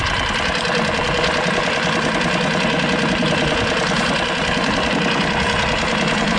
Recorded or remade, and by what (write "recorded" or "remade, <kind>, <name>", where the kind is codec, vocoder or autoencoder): recorded